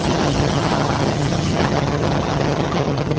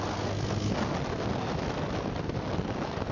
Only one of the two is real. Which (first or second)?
second